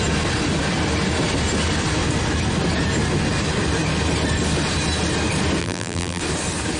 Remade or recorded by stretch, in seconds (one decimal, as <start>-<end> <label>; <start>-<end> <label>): 0.0-5.6 recorded; 5.6-6.2 remade; 6.2-6.8 recorded